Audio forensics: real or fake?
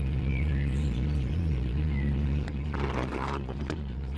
fake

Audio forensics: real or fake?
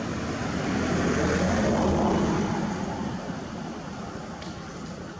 real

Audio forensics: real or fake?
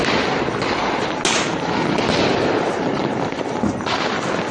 real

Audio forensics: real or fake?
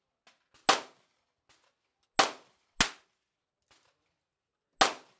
real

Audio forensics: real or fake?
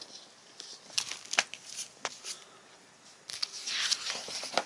real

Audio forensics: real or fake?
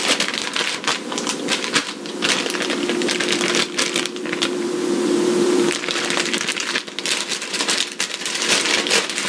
fake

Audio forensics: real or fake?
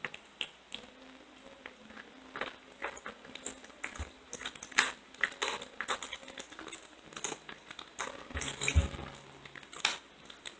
real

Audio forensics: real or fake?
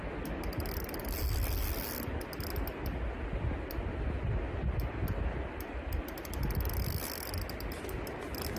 real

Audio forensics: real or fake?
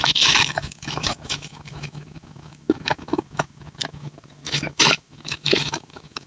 fake